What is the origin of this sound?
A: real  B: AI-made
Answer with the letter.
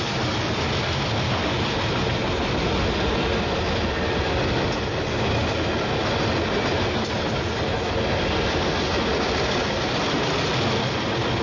A